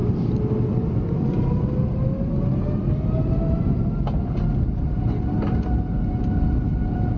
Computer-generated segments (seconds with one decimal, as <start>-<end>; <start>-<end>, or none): none